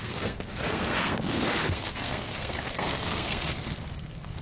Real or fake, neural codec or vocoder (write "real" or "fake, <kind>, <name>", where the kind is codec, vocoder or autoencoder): fake, codec, SNAC